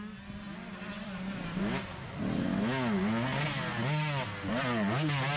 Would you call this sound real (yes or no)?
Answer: yes